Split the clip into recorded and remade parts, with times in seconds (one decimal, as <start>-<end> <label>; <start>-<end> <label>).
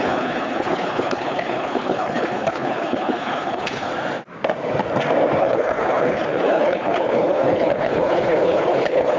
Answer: 0.0-3.9 remade; 3.9-5.4 recorded; 5.4-9.2 remade